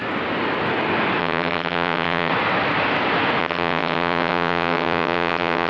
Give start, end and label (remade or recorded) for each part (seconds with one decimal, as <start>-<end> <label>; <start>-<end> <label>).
0.0-1.2 recorded; 1.2-2.3 remade; 2.3-3.4 recorded; 3.4-5.7 remade